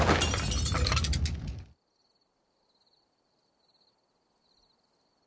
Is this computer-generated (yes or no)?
no